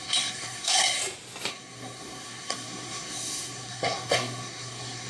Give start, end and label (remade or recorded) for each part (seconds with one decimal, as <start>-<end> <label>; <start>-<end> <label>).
0.0-1.0 remade; 1.0-1.5 recorded; 1.5-5.1 remade